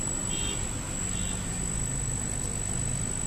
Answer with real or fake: real